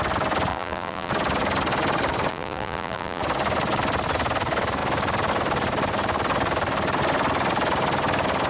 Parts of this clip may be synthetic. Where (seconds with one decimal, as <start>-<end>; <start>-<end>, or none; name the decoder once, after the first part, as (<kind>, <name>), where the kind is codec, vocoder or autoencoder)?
0.5-1.1 (vocoder, BigVGAN v2); 2.3-3.2